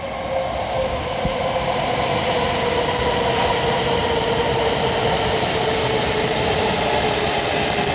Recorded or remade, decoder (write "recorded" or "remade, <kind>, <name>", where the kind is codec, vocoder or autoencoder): recorded